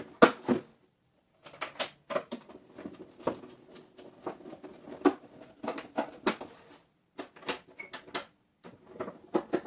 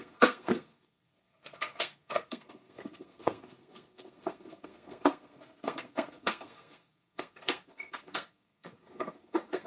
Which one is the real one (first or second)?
first